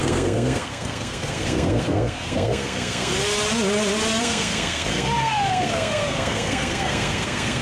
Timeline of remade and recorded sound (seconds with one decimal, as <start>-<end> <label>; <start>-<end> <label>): 0.0-3.1 remade; 3.1-4.2 recorded; 4.2-7.6 remade